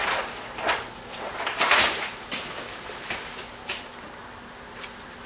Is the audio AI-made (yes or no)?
no